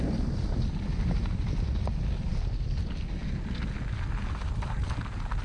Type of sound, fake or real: real